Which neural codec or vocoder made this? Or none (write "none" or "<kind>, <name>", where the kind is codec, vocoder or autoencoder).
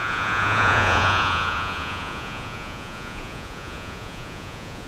vocoder, Vocos